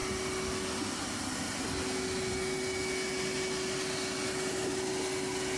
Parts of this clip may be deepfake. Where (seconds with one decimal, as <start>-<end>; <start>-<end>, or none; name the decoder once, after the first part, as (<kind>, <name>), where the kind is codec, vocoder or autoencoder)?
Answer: none

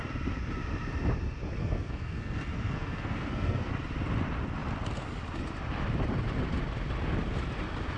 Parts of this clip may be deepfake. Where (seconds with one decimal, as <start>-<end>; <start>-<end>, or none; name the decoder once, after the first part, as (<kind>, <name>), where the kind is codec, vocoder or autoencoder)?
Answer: 1.6-3.7 (codec, SNAC)

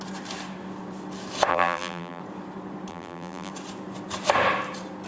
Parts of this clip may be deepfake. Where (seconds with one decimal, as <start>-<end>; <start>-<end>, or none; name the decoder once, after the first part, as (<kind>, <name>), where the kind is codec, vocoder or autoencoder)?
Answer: 1.5-2.2 (vocoder, BigVGAN v2); 2.9-3.5

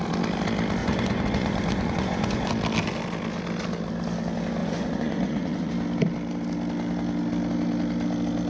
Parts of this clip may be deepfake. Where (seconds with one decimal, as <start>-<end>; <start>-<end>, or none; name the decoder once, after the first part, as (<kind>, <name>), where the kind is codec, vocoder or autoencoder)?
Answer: 0.8-2.5 (vocoder, Vocos); 4.6-5.7

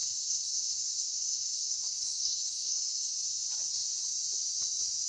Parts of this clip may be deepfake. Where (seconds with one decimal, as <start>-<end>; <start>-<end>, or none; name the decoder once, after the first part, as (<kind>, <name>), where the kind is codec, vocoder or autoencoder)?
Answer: 0.0-3.1 (codec, SNAC)

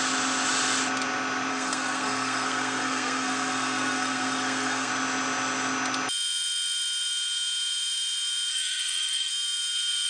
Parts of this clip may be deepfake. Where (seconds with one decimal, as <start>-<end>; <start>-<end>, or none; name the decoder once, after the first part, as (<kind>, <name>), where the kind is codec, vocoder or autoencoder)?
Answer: 1.5-4.9 (codec, SNAC); 8.5-9.3

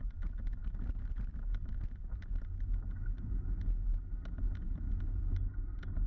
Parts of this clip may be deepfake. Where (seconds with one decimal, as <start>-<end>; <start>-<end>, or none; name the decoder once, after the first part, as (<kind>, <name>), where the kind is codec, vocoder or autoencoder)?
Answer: none

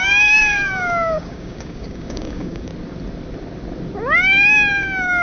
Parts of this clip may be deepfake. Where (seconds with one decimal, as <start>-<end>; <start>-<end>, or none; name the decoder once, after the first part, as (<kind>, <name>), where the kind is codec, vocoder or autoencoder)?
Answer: 0.0-2.7 (codec, DAC); 4.7-5.2